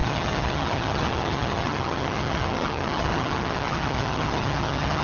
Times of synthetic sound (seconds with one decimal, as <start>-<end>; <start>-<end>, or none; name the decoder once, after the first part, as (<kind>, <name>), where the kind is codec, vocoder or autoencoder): 0.0-5.0 (vocoder, HiFi-GAN)

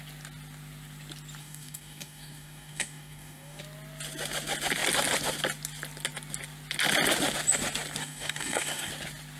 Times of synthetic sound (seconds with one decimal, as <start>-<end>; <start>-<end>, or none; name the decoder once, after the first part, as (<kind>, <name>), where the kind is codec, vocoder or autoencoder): 1.4-3.6 (codec, DAC); 8.0-8.9

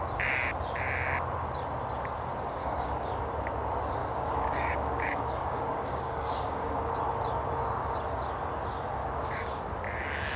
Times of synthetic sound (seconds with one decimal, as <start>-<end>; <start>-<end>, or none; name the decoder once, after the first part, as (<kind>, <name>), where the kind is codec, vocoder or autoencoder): 2.6-3.2 (codec, DAC); 4.0-6.9; 9.0-9.6

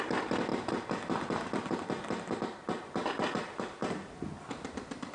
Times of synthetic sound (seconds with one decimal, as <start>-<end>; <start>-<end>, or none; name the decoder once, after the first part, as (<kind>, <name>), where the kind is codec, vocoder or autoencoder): none

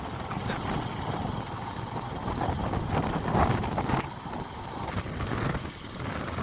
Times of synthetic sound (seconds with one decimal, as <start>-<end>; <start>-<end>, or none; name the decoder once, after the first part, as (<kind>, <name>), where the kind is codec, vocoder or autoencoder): none

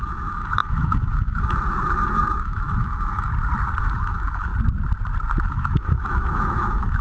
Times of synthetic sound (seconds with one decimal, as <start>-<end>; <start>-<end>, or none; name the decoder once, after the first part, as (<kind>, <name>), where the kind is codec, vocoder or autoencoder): 0.0-3.3 (autoencoder, DAC-VAE); 3.8-4.5; 5.4-7.0